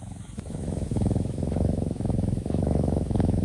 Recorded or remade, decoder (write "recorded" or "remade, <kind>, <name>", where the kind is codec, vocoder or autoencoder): remade, autoencoder, DAC-VAE